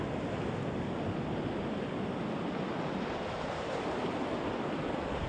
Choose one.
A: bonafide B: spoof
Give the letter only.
A